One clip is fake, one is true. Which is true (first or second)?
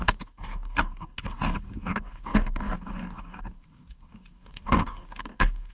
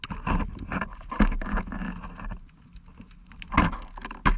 second